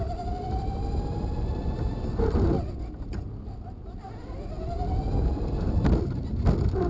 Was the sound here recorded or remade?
recorded